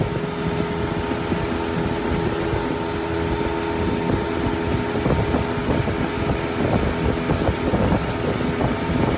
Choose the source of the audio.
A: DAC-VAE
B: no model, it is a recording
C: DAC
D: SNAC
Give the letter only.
B